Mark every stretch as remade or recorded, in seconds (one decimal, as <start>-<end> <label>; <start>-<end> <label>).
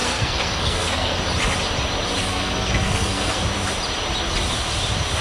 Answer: 0.0-1.2 remade; 1.2-2.2 recorded; 2.2-3.4 remade; 3.4-5.2 recorded